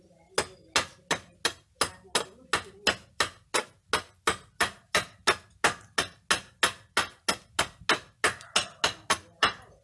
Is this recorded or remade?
recorded